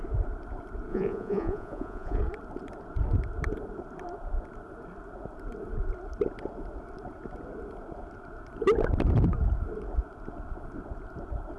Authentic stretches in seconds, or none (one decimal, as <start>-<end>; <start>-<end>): 0.0-0.9; 2.2-11.6